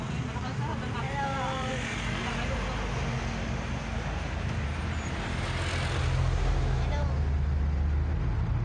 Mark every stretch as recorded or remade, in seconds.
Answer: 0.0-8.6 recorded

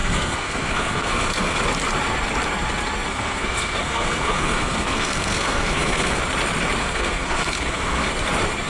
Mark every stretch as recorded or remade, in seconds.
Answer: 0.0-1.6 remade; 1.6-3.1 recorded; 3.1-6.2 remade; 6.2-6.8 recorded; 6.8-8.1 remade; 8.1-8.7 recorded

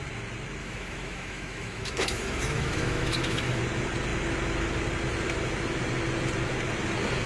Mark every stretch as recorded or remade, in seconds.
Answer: 0.0-0.6 recorded; 0.6-3.6 remade; 3.6-7.3 recorded

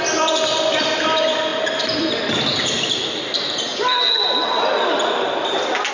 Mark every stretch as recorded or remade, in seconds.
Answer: 0.0-1.5 recorded; 1.5-3.1 remade; 3.1-3.7 recorded; 3.7-5.2 remade; 5.2-5.9 recorded

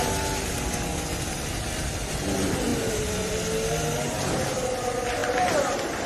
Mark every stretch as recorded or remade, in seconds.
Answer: 0.0-6.1 recorded

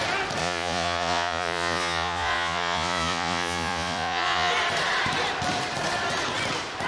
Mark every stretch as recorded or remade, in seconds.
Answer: 0.0-0.4 recorded; 0.4-4.5 remade; 4.5-6.9 recorded

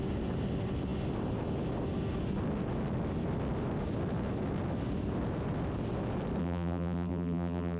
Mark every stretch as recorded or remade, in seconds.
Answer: 0.0-6.4 recorded; 6.4-7.8 remade